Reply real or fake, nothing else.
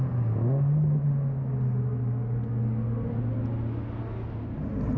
real